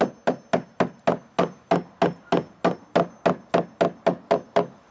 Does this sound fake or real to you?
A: real